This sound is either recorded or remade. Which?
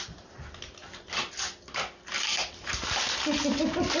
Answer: recorded